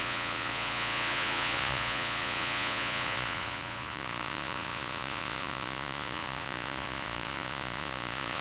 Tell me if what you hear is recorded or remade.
remade